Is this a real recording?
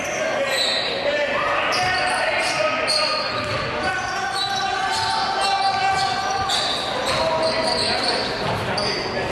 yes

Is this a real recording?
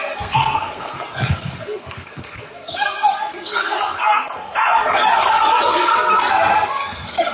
no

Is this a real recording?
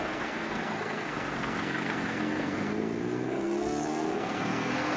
no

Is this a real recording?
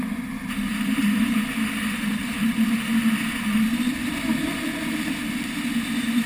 no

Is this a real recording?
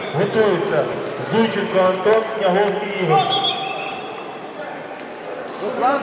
yes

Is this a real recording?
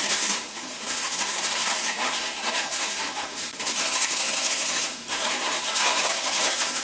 no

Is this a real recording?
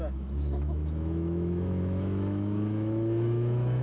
no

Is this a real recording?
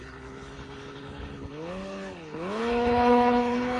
no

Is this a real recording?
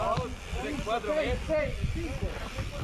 yes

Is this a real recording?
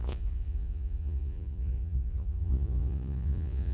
no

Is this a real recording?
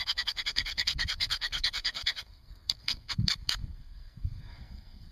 no